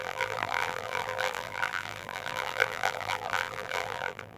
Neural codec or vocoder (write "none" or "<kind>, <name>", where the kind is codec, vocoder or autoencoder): vocoder, BigVGAN v2